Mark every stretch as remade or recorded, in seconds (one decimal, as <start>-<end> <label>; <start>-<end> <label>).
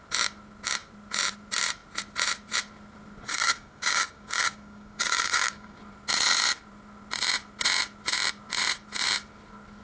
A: 0.0-3.3 recorded; 3.3-5.8 remade; 5.8-9.8 recorded